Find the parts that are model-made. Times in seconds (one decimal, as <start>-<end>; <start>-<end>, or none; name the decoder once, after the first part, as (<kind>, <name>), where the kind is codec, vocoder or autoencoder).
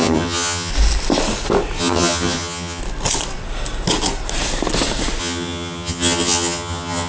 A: 0.0-0.7 (vocoder, HiFi-GAN); 1.8-2.8; 5.2-7.1